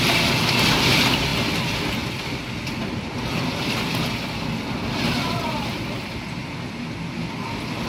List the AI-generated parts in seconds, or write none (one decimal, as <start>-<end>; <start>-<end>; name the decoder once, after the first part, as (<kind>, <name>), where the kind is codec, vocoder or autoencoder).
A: none